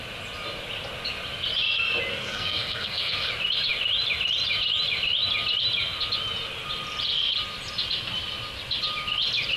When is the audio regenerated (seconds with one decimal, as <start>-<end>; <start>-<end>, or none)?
2.1-3.3